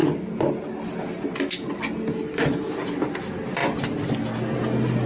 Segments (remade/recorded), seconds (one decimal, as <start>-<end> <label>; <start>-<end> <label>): 0.0-5.1 recorded